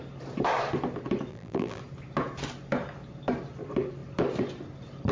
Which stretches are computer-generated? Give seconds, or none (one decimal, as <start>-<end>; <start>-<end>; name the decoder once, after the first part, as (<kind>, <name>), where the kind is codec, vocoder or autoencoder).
1.3-1.8 (vocoder, BigVGAN v2)